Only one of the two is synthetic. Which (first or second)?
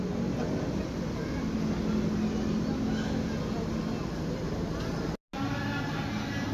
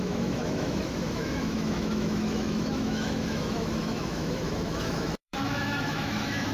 second